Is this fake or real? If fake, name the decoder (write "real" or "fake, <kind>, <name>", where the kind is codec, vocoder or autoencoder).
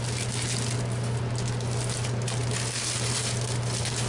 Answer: real